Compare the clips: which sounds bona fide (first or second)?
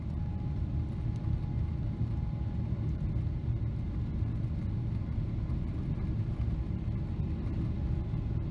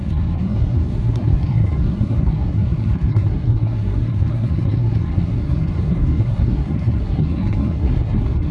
first